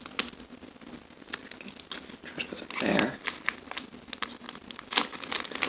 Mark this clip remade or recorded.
recorded